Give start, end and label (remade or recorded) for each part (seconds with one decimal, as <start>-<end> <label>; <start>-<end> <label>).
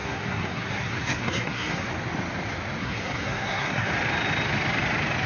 0.0-1.9 remade; 1.9-2.8 recorded; 2.8-3.9 remade; 3.9-5.3 recorded